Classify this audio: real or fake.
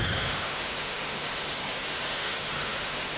fake